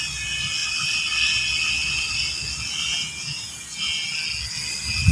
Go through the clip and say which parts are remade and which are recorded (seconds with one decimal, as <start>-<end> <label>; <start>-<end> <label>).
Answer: 0.0-5.1 recorded